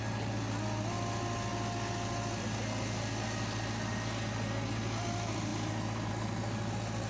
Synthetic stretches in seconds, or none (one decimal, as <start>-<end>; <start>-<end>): none